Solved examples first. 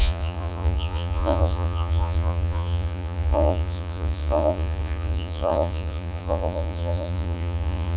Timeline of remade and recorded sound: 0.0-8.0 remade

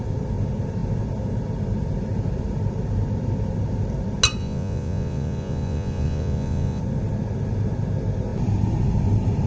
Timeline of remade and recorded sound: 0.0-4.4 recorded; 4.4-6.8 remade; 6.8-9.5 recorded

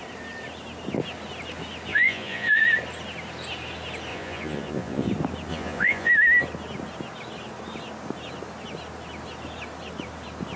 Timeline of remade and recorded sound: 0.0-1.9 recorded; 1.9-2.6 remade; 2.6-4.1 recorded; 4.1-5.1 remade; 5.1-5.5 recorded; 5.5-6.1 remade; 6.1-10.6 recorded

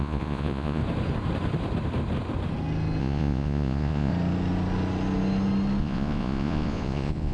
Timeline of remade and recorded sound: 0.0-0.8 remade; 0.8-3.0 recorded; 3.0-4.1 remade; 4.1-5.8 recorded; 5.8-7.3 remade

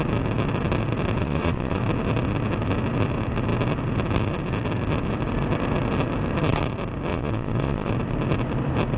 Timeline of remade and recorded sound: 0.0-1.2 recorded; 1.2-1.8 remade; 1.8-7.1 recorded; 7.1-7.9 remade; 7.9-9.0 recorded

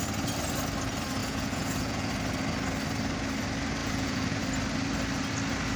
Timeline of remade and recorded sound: 0.0-1.2 recorded; 1.2-2.1 remade; 2.1-3.8 recorded; 3.8-4.4 remade; 4.4-5.8 recorded

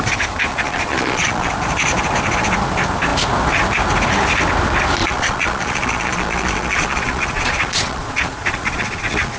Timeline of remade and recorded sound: 0.0-0.5 recorded; 0.5-1.5 remade; 1.5-5.0 recorded; 5.0-9.4 remade

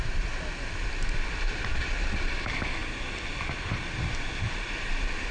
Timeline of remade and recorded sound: 0.0-1.7 recorded; 1.7-2.3 remade; 2.3-5.3 recorded